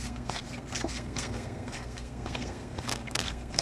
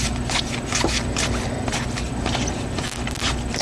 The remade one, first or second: first